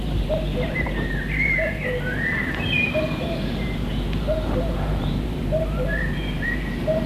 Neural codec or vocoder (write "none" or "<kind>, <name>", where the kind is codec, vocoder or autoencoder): vocoder, BigVGAN v2